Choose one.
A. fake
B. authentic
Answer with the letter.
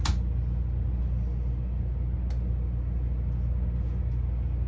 B